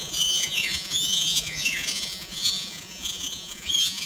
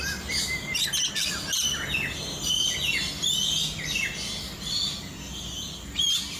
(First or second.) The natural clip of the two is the second